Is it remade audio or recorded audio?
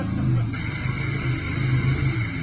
recorded